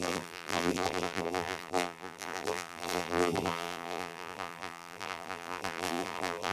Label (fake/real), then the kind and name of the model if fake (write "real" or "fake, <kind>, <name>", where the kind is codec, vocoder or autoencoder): fake, vocoder, BigVGAN v2